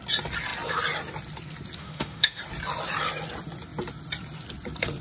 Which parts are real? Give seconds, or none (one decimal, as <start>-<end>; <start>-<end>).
0.0-1.8; 2.4-5.0